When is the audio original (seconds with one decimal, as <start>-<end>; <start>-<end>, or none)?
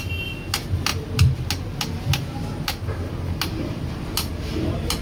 0.0-5.0